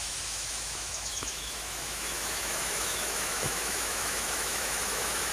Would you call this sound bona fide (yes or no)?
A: no